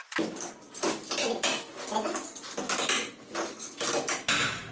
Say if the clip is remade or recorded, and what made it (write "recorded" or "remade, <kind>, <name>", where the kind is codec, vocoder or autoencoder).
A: recorded